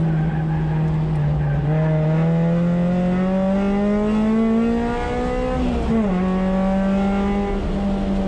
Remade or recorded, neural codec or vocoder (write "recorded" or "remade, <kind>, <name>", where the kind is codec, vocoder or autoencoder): recorded